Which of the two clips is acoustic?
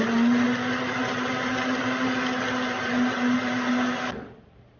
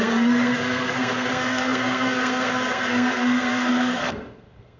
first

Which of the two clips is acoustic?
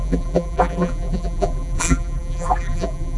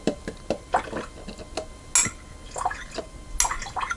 second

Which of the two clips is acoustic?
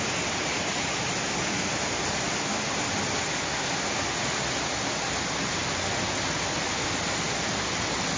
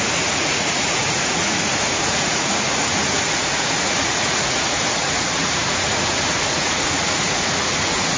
first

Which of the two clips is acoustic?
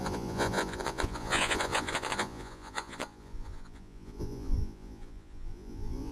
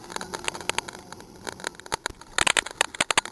second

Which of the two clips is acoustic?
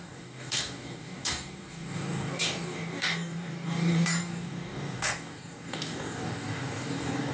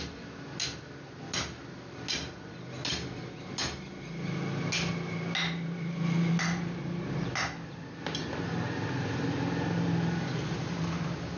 second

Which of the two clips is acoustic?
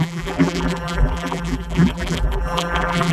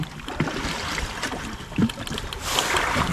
second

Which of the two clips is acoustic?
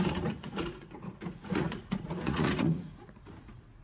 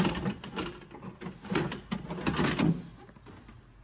second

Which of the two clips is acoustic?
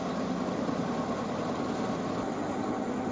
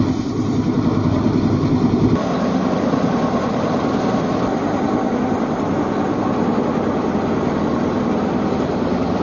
first